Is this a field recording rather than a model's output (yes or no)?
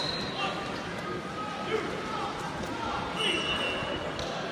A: yes